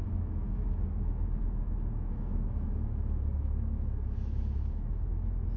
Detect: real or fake fake